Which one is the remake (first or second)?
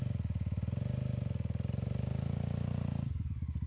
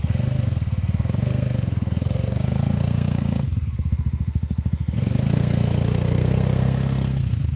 second